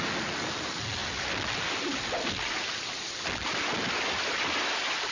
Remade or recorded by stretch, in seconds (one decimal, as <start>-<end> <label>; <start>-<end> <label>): 0.0-5.1 recorded

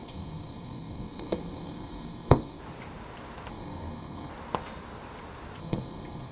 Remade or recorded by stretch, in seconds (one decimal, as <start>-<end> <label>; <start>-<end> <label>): 0.0-2.6 remade; 2.6-3.5 recorded; 3.5-4.3 remade; 4.3-5.6 recorded; 5.6-6.3 remade

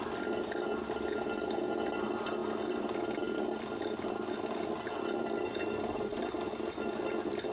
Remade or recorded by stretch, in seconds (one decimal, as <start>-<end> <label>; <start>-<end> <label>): 0.0-7.5 recorded

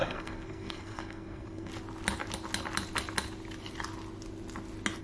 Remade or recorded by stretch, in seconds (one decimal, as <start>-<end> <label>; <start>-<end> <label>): 0.0-1.7 remade; 1.7-5.0 recorded

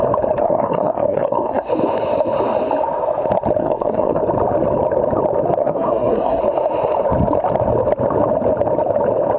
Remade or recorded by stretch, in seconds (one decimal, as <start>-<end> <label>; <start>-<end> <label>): 0.0-0.4 recorded; 0.4-1.7 remade; 1.7-3.6 recorded; 3.6-4.2 remade; 4.2-5.6 recorded; 5.6-6.4 remade; 6.4-9.4 recorded

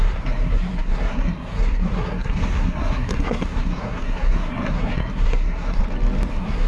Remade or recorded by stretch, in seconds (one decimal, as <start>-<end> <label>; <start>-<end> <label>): 0.0-5.8 remade; 5.8-6.3 recorded; 6.3-6.7 remade